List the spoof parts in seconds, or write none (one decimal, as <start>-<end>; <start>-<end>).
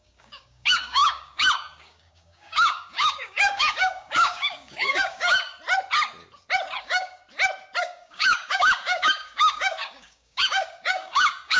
0.0-5.5; 6.8-7.2; 7.8-11.6